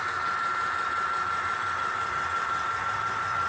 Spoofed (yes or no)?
no